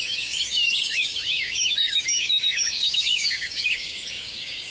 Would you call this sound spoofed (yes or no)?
yes